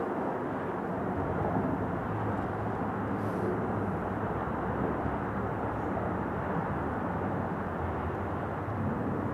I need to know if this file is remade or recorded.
recorded